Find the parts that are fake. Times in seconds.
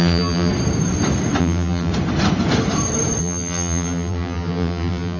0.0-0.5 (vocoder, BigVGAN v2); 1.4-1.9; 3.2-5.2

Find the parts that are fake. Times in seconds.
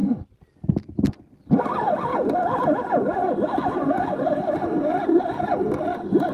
1.6-2.1 (vocoder, BigVGAN v2); 5.2-6.3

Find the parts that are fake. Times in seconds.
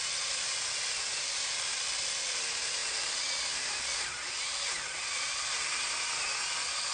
none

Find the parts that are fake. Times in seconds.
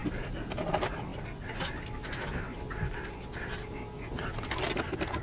none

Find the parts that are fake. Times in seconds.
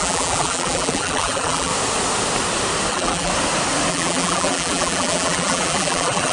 0.0-1.7 (vocoder, BigVGAN v2); 2.9-3.3; 3.9-6.3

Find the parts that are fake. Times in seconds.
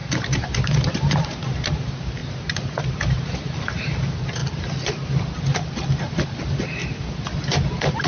0.0-4.4 (vocoder, BigVGAN v2); 6.1-6.8